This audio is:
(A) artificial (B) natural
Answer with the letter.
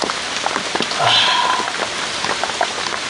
B